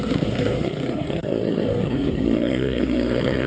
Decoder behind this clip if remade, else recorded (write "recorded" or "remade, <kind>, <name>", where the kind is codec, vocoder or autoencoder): remade, codec, SNAC